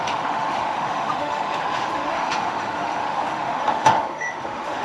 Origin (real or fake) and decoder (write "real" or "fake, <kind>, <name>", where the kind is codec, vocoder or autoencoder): fake, autoencoder, DAC-VAE